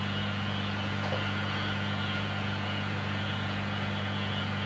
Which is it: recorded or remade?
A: remade